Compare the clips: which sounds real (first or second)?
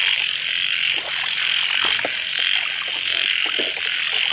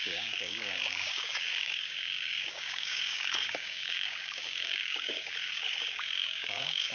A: first